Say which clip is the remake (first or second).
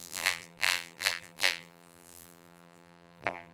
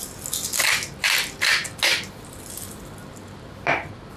first